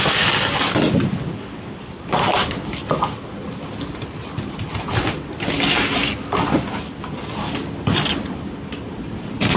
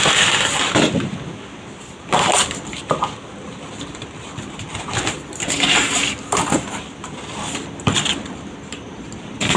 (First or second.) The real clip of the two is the first